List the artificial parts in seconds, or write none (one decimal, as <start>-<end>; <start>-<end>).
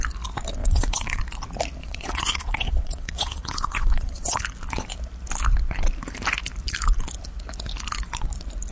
0.6-1.2; 1.8-4.4